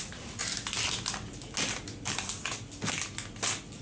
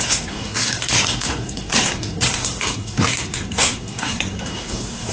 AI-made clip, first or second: second